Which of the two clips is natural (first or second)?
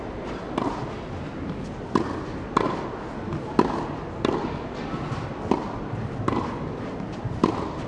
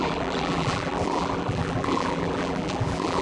first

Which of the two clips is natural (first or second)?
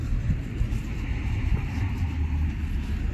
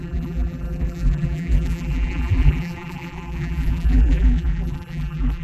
first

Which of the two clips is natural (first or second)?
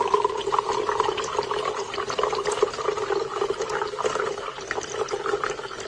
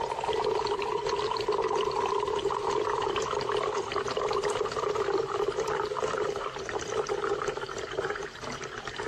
first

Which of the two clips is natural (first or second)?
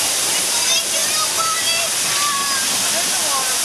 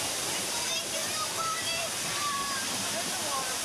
first